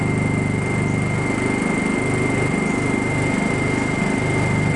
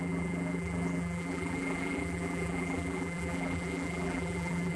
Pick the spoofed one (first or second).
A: second